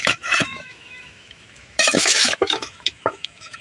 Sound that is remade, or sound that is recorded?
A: remade